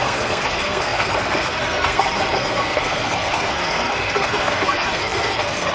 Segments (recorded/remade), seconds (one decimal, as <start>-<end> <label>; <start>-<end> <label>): 0.0-5.7 remade